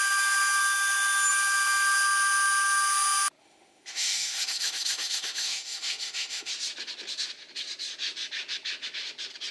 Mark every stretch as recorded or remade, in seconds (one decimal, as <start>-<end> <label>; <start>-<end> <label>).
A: 0.0-3.4 recorded; 3.4-6.5 remade; 6.5-9.5 recorded